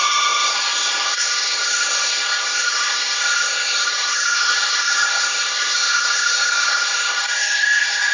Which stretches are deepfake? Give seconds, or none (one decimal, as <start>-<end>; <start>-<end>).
0.0-8.1